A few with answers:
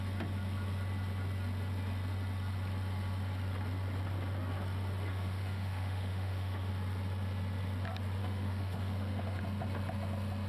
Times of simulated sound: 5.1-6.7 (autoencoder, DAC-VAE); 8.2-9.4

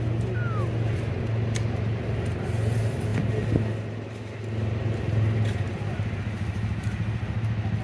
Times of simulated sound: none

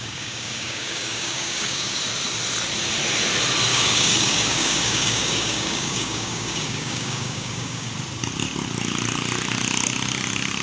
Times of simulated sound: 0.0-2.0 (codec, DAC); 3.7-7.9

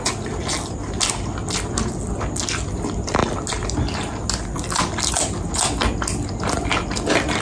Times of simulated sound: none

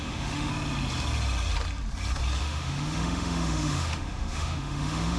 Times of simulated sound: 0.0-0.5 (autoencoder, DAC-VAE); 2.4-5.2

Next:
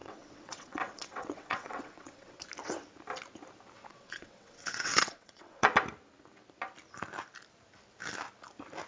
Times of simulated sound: 0.0-2.4 (vocoder, WaveNeXt); 3.9-5.7